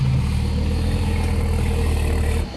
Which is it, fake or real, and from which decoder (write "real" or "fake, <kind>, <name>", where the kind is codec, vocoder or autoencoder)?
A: real